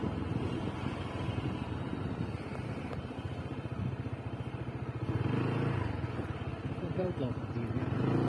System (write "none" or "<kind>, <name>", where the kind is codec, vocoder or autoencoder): vocoder, BigVGAN v2